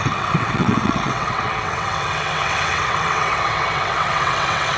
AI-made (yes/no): yes